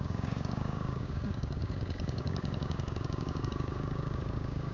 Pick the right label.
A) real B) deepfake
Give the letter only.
B